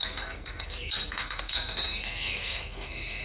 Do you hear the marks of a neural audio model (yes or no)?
yes